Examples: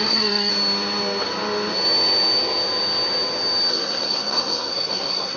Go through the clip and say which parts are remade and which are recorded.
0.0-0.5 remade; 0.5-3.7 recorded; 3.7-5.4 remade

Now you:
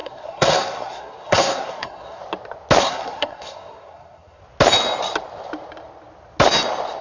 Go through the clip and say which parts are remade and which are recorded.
0.0-2.2 remade; 2.2-2.8 recorded; 2.8-4.4 remade; 4.4-7.0 recorded

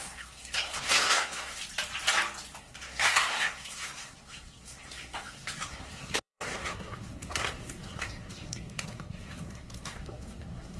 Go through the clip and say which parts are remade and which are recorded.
0.0-1.6 remade; 1.6-2.6 recorded; 2.6-10.8 remade